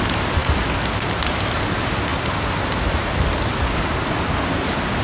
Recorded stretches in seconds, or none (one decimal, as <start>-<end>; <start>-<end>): 0.0-5.0